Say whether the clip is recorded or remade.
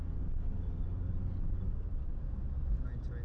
recorded